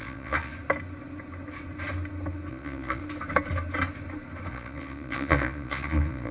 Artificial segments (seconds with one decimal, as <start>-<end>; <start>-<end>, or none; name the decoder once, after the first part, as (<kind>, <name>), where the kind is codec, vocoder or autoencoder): 0.0-0.5 (vocoder, Vocos); 2.5-3.0; 4.5-6.3